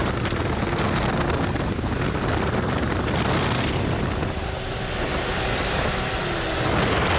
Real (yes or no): yes